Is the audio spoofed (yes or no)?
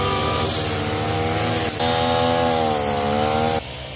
no